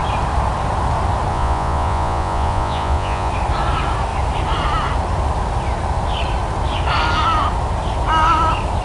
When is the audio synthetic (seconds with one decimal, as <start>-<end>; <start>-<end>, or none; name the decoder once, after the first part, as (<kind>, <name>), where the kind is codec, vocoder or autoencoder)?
1.3-3.3 (vocoder, Vocos)